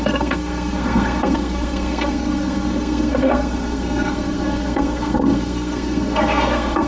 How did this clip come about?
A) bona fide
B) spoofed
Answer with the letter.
B